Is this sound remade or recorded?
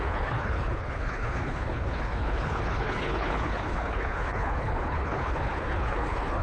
remade